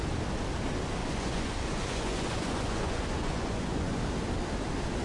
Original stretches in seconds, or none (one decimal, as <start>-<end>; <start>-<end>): 0.0-1.0; 4.0-5.0